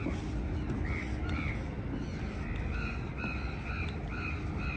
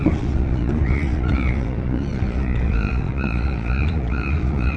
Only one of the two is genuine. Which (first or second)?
first